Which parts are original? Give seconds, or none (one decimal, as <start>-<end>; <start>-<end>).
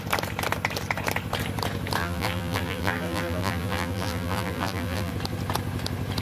0.0-2.0; 5.1-6.2